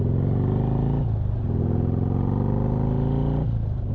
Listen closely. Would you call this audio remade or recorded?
recorded